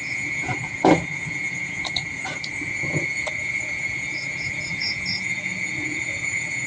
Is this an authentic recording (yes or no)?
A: no